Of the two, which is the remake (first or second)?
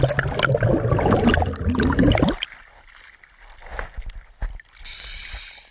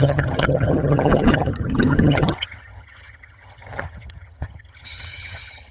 second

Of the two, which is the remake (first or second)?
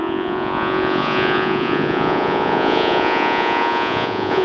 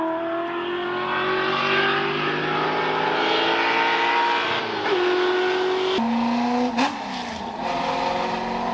first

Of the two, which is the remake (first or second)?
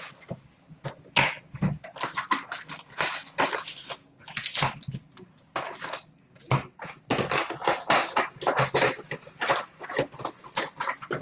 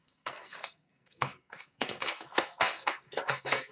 second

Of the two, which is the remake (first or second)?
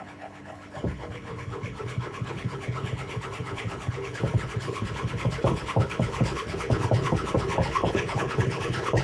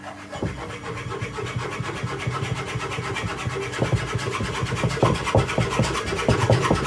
first